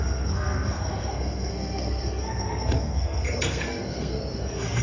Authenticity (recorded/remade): remade